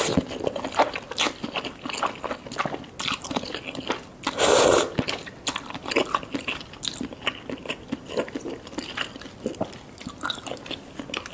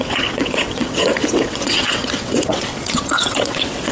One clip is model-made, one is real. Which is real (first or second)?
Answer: first